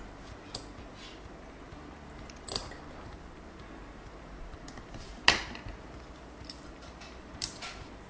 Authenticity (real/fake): real